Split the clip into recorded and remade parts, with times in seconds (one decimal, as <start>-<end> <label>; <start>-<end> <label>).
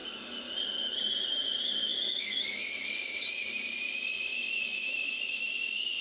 0.0-0.8 recorded; 0.8-1.9 remade; 1.9-3.5 recorded; 3.5-6.0 remade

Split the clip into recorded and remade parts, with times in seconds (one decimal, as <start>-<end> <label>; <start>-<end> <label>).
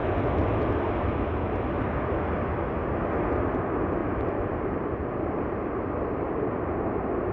0.0-4.0 recorded; 4.0-6.4 remade; 6.4-7.3 recorded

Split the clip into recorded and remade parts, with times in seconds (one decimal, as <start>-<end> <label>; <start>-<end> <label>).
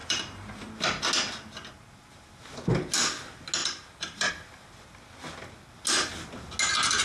0.0-0.7 remade; 0.7-3.6 recorded; 3.6-4.3 remade; 4.3-7.0 recorded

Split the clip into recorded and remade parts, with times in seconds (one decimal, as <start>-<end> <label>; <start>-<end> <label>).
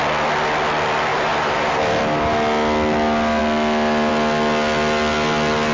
0.0-1.1 recorded; 1.1-2.0 remade; 2.0-5.7 recorded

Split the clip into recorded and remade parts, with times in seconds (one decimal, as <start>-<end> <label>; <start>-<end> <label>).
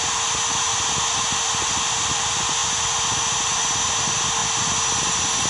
0.0-5.5 recorded